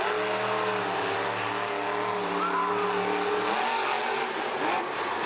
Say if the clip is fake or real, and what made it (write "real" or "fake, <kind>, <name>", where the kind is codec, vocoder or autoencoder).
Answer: real